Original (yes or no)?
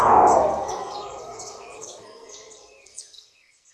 no